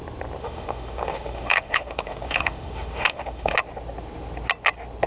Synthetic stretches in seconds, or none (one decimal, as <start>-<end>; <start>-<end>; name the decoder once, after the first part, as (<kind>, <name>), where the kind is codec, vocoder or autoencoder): 0.4-3.5 (autoencoder, DAC-VAE)